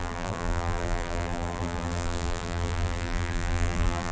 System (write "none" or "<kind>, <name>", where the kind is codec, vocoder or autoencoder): vocoder, BigVGAN v2